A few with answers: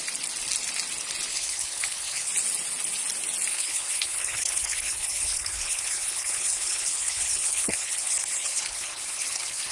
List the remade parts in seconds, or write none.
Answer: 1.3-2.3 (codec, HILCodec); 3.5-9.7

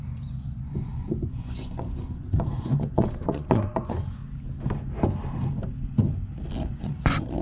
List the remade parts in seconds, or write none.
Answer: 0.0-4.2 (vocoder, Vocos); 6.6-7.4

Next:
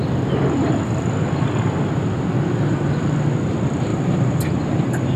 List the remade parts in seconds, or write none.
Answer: none